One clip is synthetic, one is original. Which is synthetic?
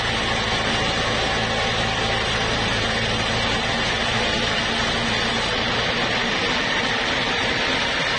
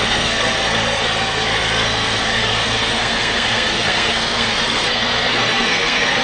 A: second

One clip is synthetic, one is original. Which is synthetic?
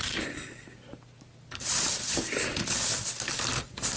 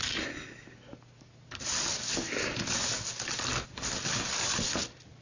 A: first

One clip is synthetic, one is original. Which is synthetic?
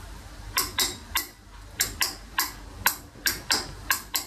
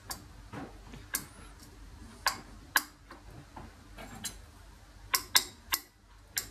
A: first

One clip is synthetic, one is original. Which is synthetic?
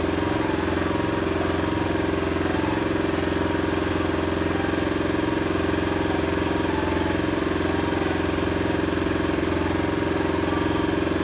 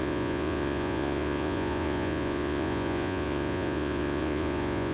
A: second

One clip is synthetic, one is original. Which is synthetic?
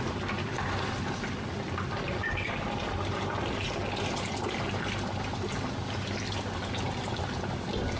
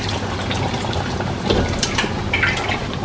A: second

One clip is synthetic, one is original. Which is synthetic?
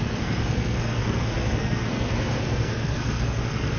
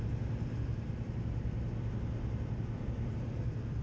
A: first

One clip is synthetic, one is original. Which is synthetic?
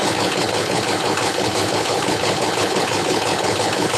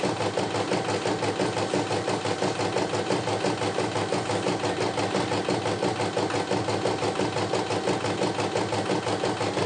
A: first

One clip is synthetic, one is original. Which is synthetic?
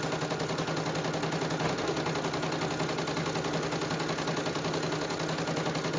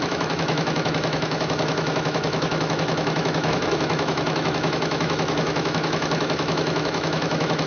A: second